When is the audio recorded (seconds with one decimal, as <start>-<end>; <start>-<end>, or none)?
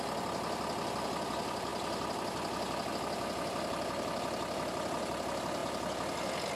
0.0-6.5